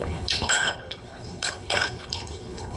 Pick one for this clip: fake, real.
fake